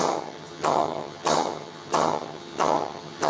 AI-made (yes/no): yes